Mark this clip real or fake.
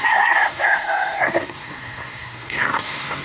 fake